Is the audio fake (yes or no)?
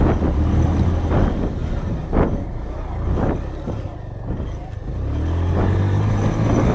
no